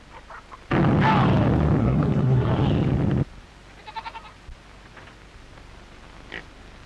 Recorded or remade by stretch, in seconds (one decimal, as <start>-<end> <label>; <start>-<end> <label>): 0.0-1.8 recorded; 1.8-2.5 remade; 2.5-6.9 recorded